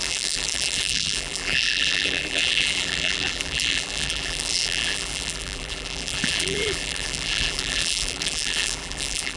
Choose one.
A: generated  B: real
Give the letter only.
A